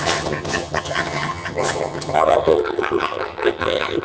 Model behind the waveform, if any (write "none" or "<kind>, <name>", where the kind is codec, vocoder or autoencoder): vocoder, HiFi-GAN